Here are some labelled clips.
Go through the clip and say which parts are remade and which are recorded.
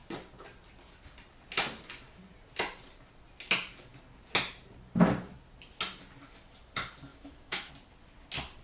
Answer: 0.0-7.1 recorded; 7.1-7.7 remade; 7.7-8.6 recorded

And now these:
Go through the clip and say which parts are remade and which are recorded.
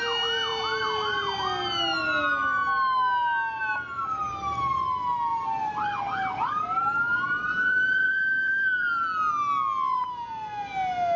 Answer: 0.0-5.3 recorded; 5.3-9.3 remade; 9.3-11.2 recorded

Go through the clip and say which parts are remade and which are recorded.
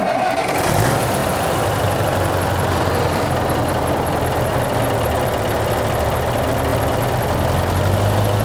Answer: 0.0-1.2 recorded; 1.2-4.5 remade; 4.5-8.4 recorded